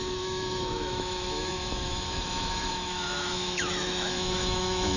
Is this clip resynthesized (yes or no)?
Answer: yes